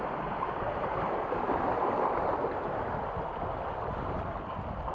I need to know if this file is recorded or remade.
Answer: recorded